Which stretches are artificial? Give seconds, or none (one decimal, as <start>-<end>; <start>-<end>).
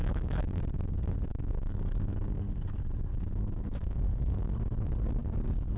0.0-0.6; 1.3-2.4; 3.1-4.5